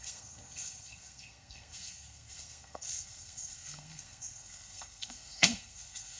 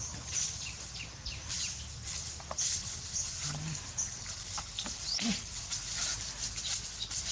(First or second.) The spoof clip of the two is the first